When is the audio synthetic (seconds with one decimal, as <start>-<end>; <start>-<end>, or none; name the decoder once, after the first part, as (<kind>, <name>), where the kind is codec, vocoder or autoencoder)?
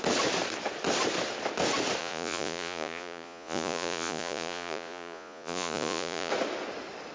2.0-6.3 (vocoder, Vocos)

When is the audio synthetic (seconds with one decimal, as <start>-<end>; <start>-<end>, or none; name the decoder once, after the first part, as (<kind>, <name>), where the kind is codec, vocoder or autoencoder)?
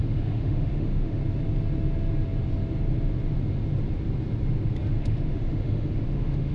0.0-1.2 (autoencoder, DAC-VAE); 5.0-6.5